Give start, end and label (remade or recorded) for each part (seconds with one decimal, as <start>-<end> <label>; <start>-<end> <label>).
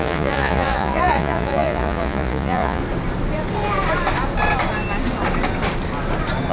0.0-2.8 remade; 2.8-6.5 recorded